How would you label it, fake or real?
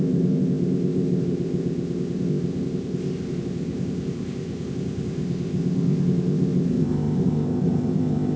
fake